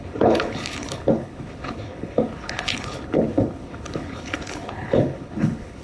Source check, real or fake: fake